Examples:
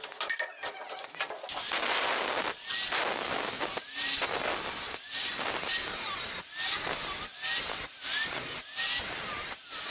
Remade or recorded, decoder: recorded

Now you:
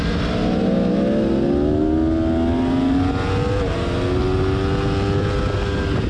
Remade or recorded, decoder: recorded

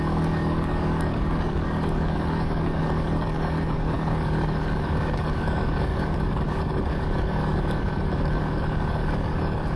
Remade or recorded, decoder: remade, codec, DAC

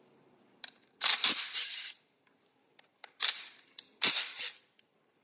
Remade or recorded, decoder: remade, vocoder, BigVGAN v2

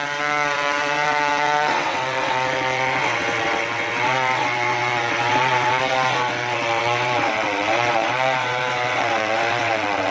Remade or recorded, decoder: remade, vocoder, WaveNeXt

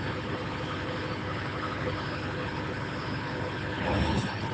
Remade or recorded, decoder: remade, codec, HILCodec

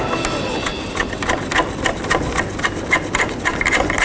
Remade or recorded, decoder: recorded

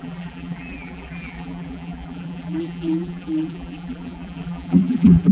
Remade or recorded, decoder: remade, vocoder, BigVGAN v2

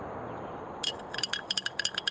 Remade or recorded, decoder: recorded